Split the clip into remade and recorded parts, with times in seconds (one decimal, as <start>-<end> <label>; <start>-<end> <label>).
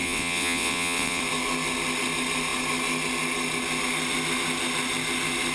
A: 0.0-1.2 remade; 1.2-5.5 recorded